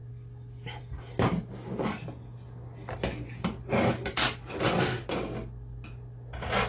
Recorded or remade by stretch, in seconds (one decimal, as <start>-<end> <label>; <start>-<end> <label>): 0.0-6.7 recorded

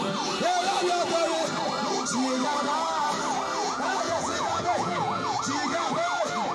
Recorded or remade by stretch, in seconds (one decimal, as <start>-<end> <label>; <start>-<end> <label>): 0.0-3.6 recorded; 3.6-5.4 remade; 5.4-6.5 recorded